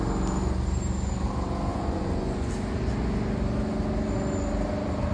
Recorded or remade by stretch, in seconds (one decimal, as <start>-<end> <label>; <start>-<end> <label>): 0.0-1.7 recorded; 1.7-2.5 remade; 2.5-5.1 recorded